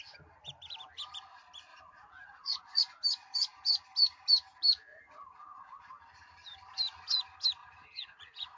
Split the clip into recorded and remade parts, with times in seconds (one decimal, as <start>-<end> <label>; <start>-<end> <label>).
0.0-1.7 recorded; 1.7-2.8 remade; 2.8-4.9 recorded; 4.9-5.8 remade; 5.8-7.6 recorded; 7.6-8.6 remade